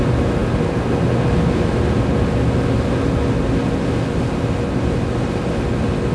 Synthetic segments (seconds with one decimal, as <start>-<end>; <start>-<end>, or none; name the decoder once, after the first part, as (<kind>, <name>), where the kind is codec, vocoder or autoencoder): none